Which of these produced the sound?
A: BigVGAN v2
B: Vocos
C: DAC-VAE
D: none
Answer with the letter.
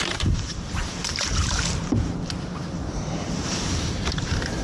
A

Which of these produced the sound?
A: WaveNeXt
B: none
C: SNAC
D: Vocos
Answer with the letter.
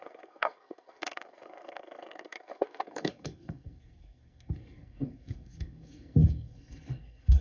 C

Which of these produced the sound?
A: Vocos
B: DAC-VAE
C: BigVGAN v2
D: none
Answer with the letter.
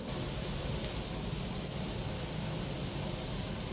C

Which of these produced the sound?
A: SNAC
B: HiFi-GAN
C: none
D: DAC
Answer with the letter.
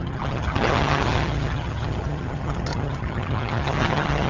B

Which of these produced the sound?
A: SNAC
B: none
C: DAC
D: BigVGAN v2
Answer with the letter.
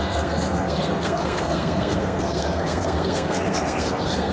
A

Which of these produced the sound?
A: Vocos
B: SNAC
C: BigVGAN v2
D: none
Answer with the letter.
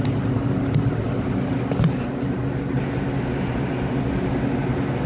D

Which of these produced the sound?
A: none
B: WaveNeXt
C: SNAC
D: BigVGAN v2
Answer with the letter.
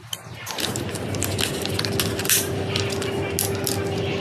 A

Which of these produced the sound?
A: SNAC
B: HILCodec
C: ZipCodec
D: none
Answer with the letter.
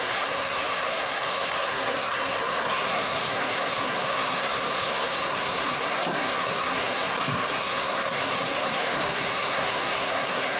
A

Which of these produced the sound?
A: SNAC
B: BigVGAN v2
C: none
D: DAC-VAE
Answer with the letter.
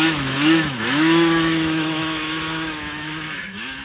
D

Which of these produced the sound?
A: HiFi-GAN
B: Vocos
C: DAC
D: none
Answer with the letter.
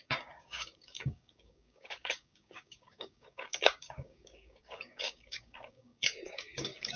C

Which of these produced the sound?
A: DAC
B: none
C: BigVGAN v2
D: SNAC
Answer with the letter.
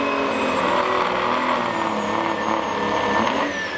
B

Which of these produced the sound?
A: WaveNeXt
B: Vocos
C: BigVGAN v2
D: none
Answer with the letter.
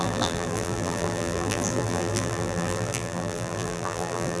C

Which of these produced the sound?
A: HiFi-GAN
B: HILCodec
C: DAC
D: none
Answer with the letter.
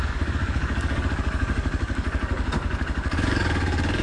C